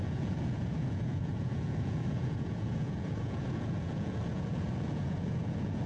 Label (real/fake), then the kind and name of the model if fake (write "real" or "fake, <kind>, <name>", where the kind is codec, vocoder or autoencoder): fake, vocoder, Vocos